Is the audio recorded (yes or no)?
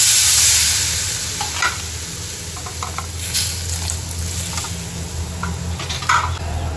yes